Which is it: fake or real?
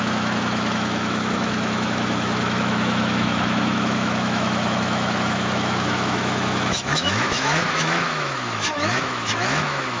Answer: fake